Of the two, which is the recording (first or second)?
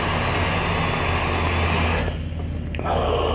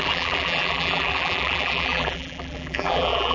first